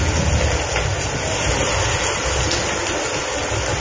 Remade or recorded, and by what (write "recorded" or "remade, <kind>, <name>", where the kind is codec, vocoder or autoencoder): recorded